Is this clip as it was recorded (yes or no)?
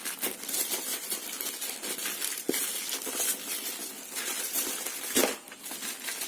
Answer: yes